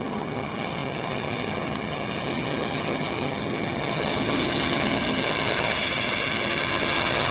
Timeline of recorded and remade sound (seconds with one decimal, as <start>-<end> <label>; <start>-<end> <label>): 0.0-7.3 remade